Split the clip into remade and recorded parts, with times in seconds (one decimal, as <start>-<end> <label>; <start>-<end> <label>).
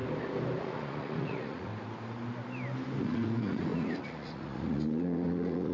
0.0-0.6 recorded; 0.6-1.7 remade; 1.7-3.0 recorded; 3.0-5.7 remade